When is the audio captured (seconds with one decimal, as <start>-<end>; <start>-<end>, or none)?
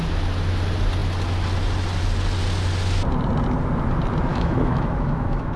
0.0-4.3